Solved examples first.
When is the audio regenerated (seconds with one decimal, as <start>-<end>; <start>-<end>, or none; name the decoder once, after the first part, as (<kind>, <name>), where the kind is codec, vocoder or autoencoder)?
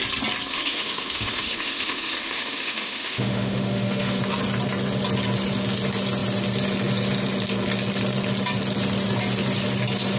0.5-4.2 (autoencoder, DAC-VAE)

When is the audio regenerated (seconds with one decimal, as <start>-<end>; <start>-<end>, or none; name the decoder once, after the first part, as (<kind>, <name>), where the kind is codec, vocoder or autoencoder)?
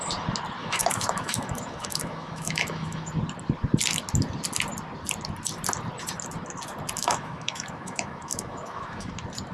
0.6-3.1 (autoencoder, DAC-VAE); 7.0-9.1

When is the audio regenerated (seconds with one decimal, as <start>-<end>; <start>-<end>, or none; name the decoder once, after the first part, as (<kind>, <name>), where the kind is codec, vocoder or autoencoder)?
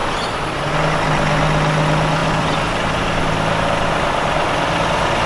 0.0-0.7 (vocoder, BigVGAN v2); 2.2-3.2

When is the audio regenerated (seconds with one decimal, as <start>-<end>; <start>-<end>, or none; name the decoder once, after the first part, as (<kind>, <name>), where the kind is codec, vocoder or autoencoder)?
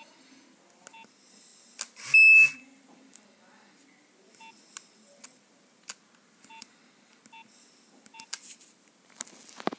none